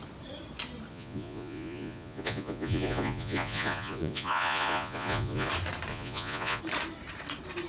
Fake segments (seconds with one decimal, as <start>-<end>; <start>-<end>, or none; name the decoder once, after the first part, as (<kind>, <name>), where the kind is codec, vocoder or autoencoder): 0.9-5.5 (vocoder, Vocos); 5.9-6.6